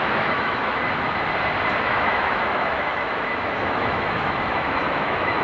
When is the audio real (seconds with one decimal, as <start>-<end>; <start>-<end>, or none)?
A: 0.8-1.8